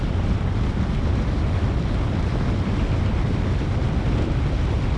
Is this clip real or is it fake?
real